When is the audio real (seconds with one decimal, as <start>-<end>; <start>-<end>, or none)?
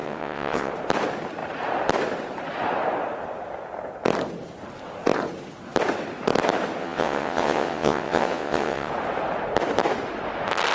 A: 0.7-6.8; 8.9-10.7